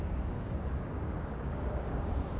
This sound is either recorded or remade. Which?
remade